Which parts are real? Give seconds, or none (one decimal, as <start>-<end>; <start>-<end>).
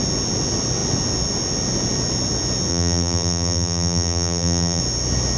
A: 0.0-2.7; 4.8-5.4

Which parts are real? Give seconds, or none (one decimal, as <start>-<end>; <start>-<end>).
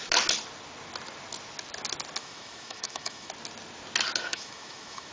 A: 0.0-2.2; 3.3-4.3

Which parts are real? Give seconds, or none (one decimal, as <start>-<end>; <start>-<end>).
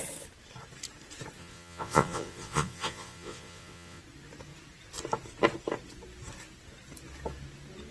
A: 0.0-1.4; 4.0-7.9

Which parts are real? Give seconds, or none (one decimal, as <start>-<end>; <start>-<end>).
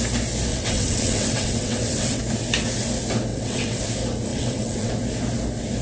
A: 0.0-0.5; 2.2-3.3; 3.8-4.3; 4.9-5.8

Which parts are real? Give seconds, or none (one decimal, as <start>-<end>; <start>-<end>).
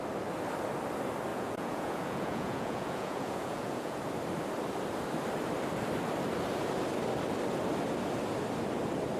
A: 0.0-1.3; 4.0-9.2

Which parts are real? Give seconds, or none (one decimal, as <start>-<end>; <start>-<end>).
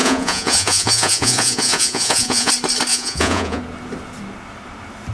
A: 2.5-2.9; 3.6-5.1